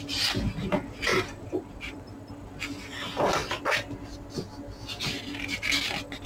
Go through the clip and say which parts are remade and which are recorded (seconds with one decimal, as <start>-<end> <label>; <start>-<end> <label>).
0.0-1.1 recorded; 1.1-2.3 remade; 2.3-6.3 recorded